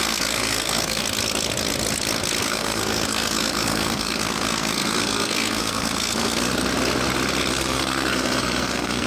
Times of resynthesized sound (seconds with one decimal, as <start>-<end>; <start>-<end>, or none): 0.0-1.0; 2.4-6.5; 7.5-9.1